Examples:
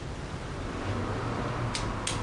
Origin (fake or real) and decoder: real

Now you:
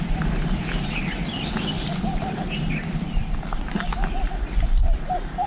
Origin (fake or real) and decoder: fake, vocoder, BigVGAN v2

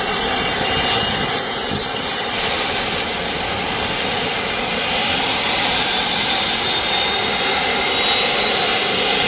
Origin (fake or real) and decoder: real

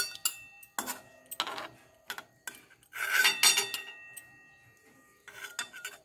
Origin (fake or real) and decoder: real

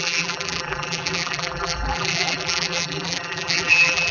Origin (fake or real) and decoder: fake, vocoder, BigVGAN v2